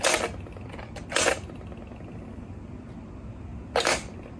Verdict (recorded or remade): recorded